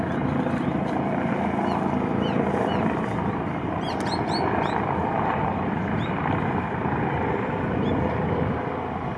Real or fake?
real